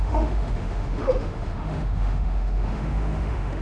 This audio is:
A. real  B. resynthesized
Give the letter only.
B